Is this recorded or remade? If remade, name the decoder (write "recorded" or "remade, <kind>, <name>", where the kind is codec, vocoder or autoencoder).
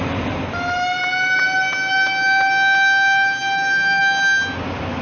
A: recorded